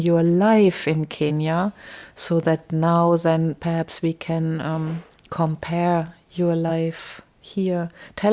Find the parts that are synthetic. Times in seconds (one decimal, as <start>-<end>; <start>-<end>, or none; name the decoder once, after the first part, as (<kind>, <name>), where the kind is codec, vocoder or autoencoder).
0.8-1.3 (codec, DAC)